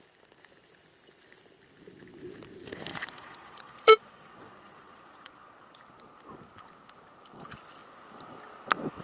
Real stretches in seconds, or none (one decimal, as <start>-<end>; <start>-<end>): 0.0-2.9; 5.8-9.0